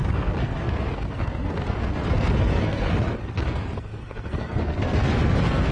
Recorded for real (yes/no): no